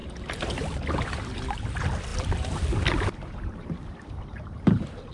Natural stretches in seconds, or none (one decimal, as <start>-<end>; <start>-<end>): none